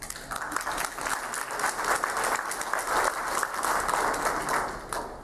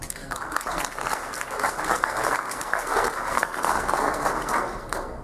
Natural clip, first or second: first